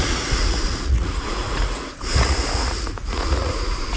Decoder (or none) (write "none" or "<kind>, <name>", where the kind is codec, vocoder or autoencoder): vocoder, Vocos